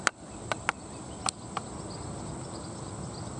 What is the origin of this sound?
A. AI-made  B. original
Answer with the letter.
B